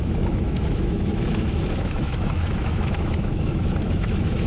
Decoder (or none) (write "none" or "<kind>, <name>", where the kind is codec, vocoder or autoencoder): autoencoder, DAC-VAE